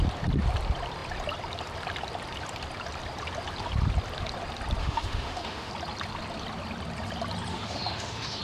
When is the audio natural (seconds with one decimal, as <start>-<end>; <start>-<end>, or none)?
0.0-4.8; 5.7-7.5